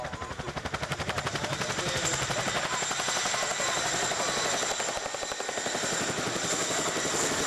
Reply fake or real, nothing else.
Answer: real